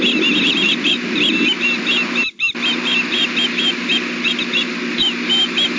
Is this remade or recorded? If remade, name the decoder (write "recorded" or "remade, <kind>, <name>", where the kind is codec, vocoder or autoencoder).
recorded